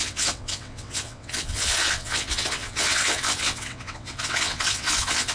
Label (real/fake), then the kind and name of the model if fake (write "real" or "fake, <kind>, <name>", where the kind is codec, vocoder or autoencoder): fake, vocoder, WaveNeXt